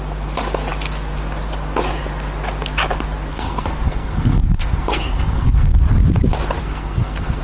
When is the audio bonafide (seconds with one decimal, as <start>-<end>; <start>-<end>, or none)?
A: 0.0-3.3; 5.8-6.6